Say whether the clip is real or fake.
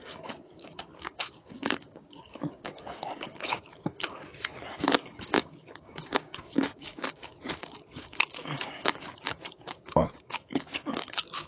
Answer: fake